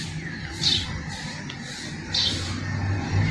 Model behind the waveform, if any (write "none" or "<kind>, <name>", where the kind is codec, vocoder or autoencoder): none